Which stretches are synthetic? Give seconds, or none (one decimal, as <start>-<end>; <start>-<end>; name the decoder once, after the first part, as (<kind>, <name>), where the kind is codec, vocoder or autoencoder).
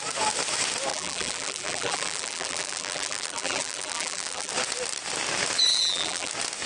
0.9-4.5 (vocoder, BigVGAN v2); 5.7-6.3